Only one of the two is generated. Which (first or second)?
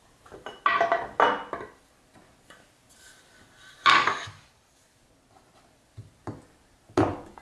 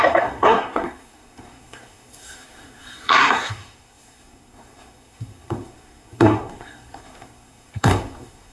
second